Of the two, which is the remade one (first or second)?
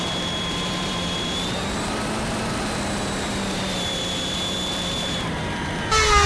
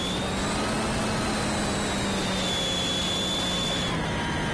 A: first